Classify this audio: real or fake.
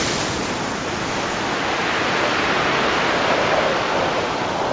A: real